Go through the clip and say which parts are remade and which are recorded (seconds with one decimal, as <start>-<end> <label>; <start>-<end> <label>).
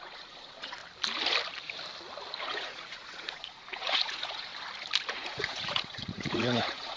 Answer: 0.0-0.8 remade; 0.8-2.4 recorded; 2.4-4.5 remade; 4.5-5.1 recorded; 5.1-7.0 remade